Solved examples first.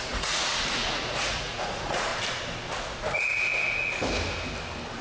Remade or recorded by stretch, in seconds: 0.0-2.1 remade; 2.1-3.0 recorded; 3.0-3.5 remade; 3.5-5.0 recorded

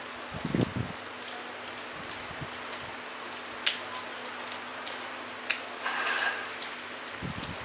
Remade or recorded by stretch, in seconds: 0.0-7.6 recorded

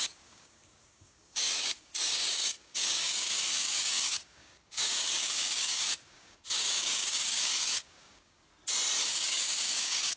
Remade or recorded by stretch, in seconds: 0.0-8.5 remade; 8.5-9.0 recorded; 9.0-10.2 remade

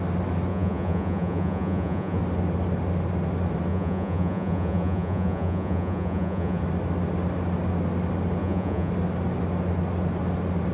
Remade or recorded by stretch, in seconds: 0.0-0.5 recorded; 0.5-2.2 remade; 2.2-3.7 recorded; 3.7-6.6 remade; 6.6-8.4 recorded; 8.4-8.9 remade; 8.9-10.7 recorded

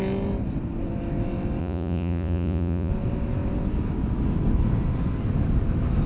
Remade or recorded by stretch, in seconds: 0.0-1.6 recorded; 1.6-2.9 remade; 2.9-6.1 recorded